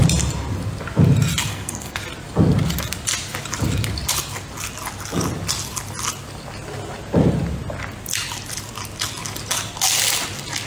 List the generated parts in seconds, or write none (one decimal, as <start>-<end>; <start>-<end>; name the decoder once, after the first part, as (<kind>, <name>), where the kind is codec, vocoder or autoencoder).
1.5-2.0 (codec, SNAC)